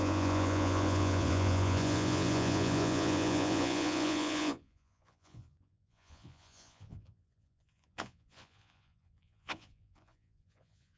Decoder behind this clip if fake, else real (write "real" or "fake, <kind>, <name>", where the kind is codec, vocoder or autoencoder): fake, vocoder, Vocos